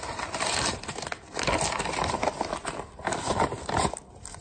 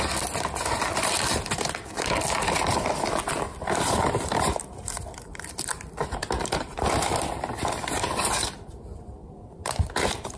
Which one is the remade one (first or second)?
second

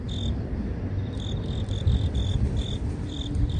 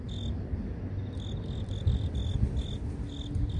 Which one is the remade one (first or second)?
first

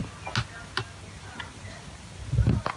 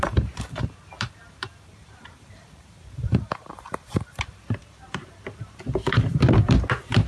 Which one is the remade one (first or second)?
second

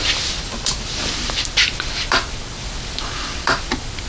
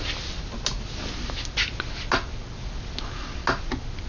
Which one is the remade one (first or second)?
first